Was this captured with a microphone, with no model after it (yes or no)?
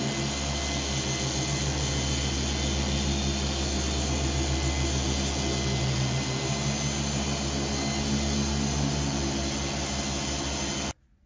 yes